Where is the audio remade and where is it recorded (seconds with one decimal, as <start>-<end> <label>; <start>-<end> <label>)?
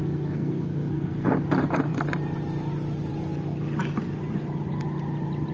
0.0-1.3 remade; 1.3-5.5 recorded